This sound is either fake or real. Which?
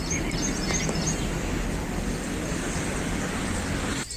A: real